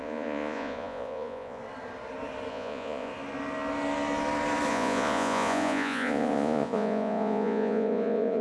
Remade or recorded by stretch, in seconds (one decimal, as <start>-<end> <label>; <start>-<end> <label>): 0.0-1.6 remade; 1.6-2.5 recorded; 2.5-3.1 remade; 3.1-4.7 recorded; 4.7-8.4 remade